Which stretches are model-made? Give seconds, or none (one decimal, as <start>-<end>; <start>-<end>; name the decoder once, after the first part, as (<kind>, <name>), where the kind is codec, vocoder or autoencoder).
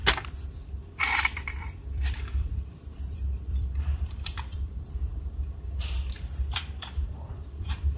0.6-8.0 (vocoder, BigVGAN v2)